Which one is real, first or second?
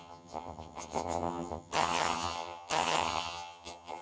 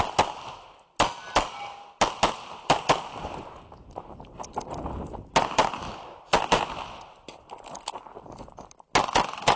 second